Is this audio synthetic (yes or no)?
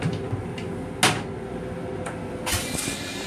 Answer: no